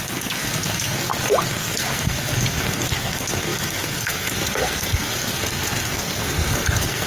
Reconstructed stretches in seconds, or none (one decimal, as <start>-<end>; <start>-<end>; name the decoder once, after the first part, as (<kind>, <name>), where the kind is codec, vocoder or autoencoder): 0.0-7.1 (codec, SNAC)